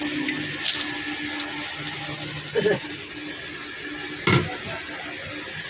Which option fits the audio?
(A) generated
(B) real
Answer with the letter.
B